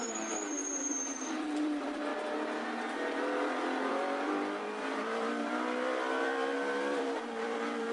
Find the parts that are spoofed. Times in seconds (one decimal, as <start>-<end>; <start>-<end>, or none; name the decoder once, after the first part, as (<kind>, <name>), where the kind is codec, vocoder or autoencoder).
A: 0.0-0.6 (vocoder, BigVGAN v2); 1.3-2.1; 3.9-7.9